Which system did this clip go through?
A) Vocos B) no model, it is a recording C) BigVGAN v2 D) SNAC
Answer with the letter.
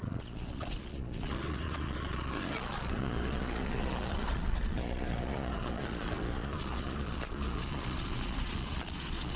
A